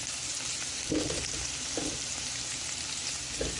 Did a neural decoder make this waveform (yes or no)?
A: yes